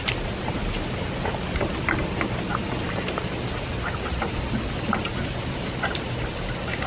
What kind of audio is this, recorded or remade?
recorded